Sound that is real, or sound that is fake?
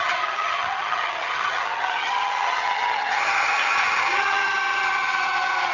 fake